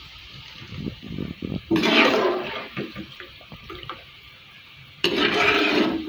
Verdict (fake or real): fake